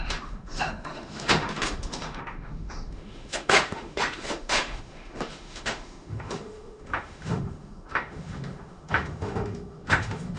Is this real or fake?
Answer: fake